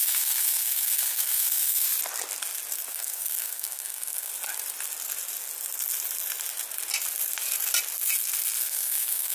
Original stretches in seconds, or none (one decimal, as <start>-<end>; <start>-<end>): 1.9-2.9; 4.3-8.6